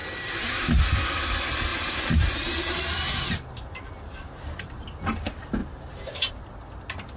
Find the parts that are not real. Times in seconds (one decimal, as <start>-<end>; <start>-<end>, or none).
0.0-0.9; 1.7-5.0; 5.6-6.3